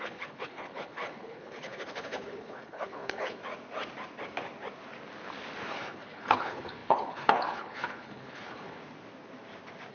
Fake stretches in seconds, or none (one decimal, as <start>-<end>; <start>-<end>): 0.0-3.4; 5.7-8.8